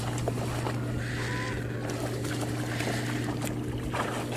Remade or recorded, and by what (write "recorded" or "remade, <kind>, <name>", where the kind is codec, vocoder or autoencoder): recorded